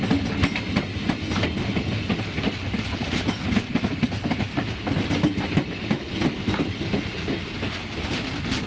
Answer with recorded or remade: recorded